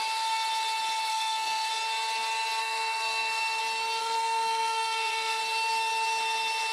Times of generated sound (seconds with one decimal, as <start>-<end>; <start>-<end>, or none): 1.1-1.7; 2.6-3.6; 4.0-5.4